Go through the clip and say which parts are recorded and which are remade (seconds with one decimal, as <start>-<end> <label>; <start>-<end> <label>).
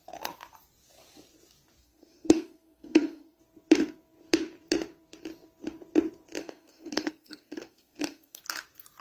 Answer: 0.0-1.8 recorded; 1.8-3.4 remade; 3.4-6.4 recorded; 6.4-8.4 remade; 8.4-9.0 recorded